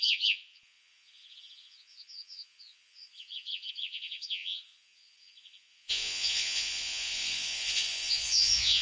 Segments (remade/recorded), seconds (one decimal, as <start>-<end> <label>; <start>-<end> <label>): 0.0-8.8 remade